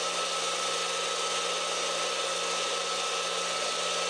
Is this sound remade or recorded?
recorded